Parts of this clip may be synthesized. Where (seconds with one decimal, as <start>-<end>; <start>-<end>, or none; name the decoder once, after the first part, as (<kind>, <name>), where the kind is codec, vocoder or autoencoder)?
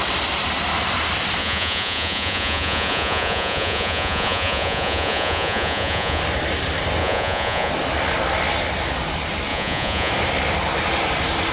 1.4-6.2 (vocoder, Vocos); 7.0-7.7; 9.5-10.1